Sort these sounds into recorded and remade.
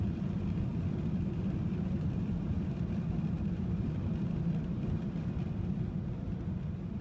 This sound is remade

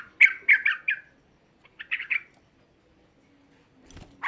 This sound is recorded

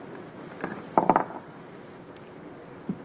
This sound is remade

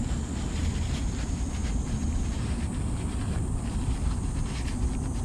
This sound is recorded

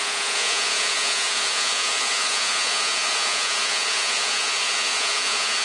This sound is remade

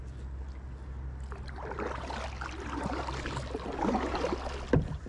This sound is recorded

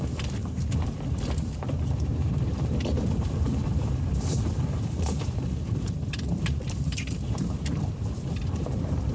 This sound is remade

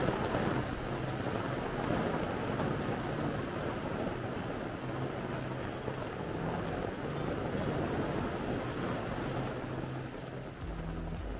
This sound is recorded